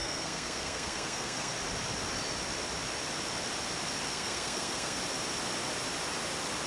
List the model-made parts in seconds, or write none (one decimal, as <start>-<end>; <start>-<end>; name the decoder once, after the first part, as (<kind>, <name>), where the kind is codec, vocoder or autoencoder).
0.0-1.5 (codec, SNAC); 4.1-5.0